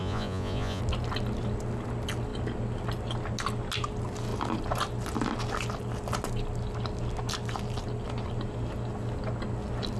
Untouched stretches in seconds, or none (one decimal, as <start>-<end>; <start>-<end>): 0.8-10.0